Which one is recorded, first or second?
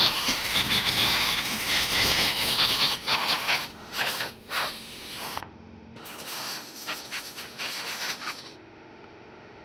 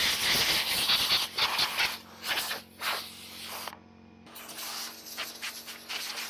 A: second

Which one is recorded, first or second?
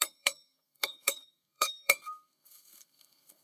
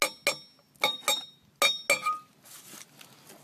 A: second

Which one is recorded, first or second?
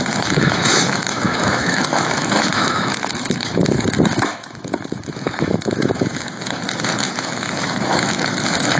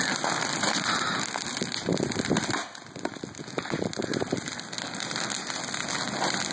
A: second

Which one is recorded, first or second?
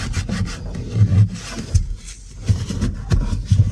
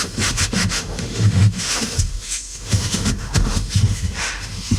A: first